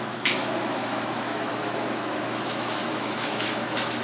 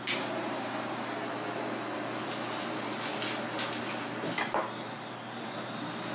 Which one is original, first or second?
second